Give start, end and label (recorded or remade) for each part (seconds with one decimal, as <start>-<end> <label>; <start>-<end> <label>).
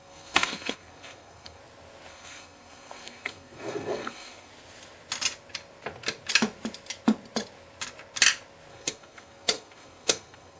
0.0-1.6 remade; 1.6-2.1 recorded; 2.1-4.5 remade; 4.5-8.7 recorded; 8.7-10.6 remade